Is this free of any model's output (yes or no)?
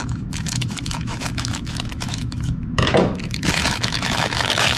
no